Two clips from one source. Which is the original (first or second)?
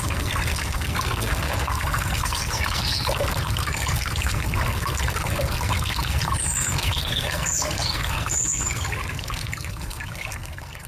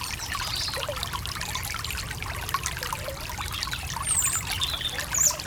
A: second